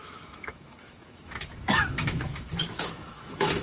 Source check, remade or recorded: remade